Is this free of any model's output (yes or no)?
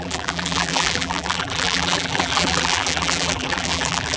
no